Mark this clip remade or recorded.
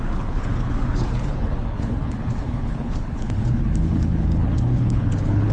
remade